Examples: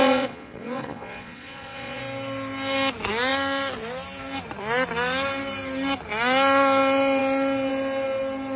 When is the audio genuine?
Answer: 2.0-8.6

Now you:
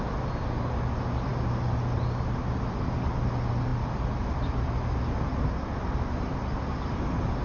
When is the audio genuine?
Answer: 0.0-7.4

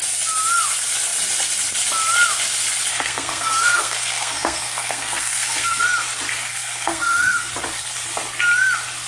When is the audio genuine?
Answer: 0.0-2.9; 5.8-6.5; 7.5-9.1

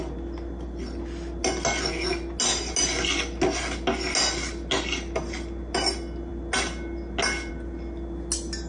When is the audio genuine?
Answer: 0.0-8.7

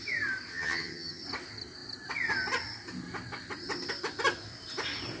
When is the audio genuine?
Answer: 0.0-0.5; 1.2-5.2

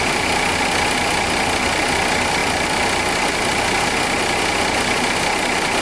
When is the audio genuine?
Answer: 0.0-5.8